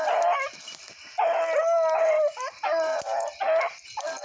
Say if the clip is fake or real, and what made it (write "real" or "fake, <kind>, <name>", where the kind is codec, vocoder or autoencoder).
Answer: real